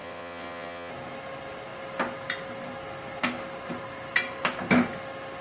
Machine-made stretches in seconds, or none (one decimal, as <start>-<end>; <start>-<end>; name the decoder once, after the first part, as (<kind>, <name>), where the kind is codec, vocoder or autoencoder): 0.0-0.9 (vocoder, WaveNeXt)